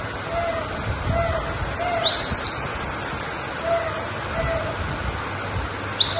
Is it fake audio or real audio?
real